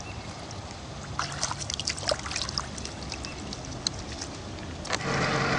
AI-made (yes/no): no